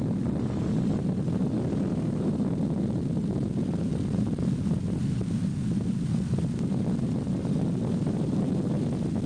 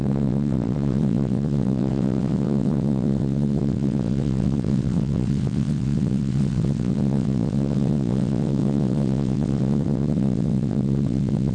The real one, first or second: first